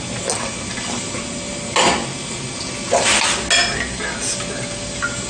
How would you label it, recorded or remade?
recorded